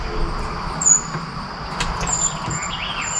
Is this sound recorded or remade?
recorded